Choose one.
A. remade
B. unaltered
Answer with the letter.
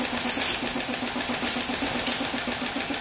B